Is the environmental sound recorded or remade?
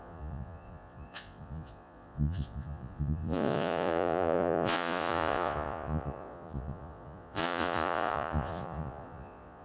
remade